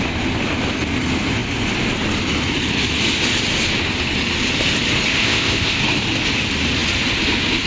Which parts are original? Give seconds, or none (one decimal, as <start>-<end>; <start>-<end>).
0.0-5.1; 5.8-7.7